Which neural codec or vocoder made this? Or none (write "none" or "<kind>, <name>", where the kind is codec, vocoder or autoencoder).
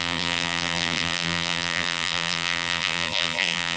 vocoder, BigVGAN v2